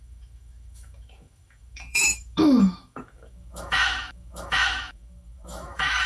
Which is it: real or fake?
fake